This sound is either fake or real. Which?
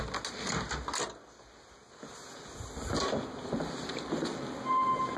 real